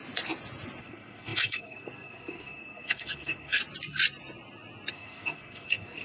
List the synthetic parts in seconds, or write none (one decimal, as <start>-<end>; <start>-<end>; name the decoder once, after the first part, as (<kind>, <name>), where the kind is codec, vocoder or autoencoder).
0.8-3.6 (codec, SNAC); 4.9-6.0